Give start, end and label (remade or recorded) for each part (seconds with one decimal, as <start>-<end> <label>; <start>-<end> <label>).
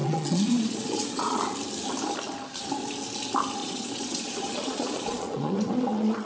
0.0-1.4 remade; 1.4-3.6 recorded; 3.6-6.3 remade